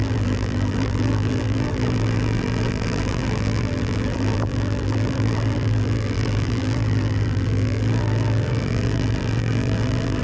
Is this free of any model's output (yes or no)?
no